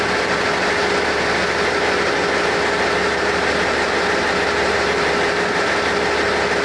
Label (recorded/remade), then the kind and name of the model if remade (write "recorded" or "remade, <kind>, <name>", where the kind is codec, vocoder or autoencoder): recorded